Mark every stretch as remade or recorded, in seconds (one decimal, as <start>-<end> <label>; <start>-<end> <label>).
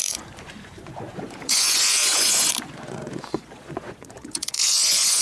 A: 0.0-5.2 remade